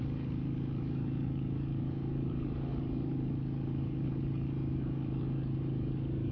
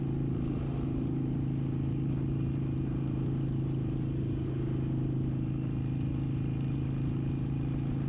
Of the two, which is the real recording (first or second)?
second